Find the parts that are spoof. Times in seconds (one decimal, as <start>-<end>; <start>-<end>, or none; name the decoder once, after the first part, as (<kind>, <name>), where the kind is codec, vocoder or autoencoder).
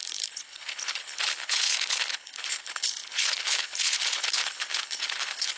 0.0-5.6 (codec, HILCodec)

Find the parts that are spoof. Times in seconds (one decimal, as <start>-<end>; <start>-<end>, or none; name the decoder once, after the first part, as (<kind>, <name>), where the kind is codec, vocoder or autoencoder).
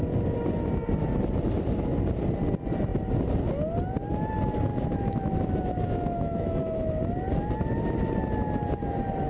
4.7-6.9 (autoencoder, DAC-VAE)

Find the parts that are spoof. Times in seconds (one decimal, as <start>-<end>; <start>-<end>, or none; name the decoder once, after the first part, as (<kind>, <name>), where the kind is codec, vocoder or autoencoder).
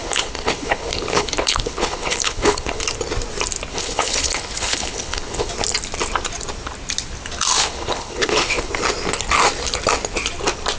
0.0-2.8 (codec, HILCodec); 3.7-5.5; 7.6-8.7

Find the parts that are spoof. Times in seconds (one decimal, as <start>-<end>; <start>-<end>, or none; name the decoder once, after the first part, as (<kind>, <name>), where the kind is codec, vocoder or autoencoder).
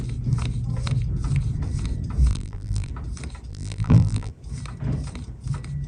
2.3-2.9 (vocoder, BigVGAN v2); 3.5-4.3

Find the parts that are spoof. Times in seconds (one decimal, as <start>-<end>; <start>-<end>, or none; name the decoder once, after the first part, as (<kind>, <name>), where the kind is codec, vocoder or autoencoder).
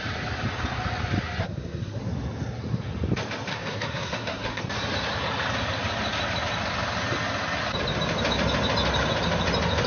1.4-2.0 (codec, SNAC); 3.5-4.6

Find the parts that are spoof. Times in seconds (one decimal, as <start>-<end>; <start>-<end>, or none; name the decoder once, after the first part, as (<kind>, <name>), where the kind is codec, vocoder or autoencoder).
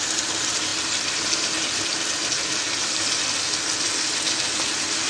none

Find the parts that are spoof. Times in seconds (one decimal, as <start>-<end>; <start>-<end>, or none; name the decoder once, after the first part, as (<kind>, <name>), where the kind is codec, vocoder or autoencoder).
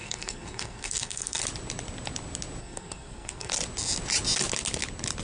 0.0-1.4 (codec, SNAC); 2.6-3.5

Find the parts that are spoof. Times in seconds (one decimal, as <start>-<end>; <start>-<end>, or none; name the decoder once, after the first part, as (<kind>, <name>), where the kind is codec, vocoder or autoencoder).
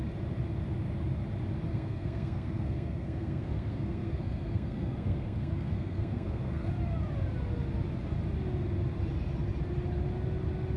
1.7-6.7 (codec, SNAC)